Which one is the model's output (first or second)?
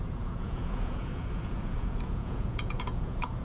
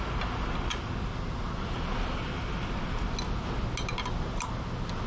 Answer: first